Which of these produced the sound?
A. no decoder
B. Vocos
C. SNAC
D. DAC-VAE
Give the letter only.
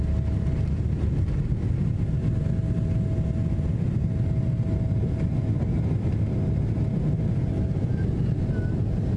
A